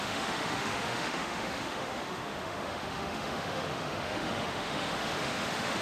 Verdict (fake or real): fake